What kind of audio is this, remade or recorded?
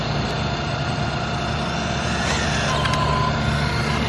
recorded